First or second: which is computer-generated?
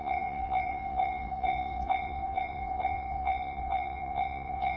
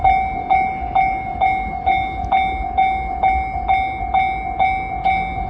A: first